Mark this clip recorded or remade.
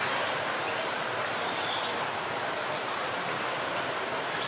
recorded